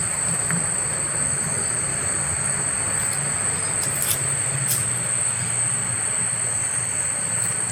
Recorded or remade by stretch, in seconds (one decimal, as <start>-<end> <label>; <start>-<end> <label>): 0.0-7.7 recorded